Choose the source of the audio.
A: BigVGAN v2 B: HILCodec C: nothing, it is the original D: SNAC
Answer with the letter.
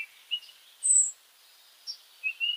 C